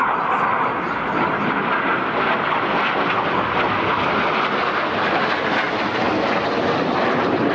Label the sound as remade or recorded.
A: recorded